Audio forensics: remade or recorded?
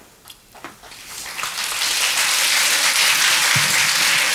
recorded